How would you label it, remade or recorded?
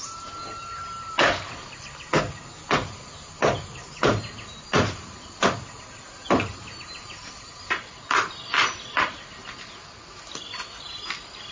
recorded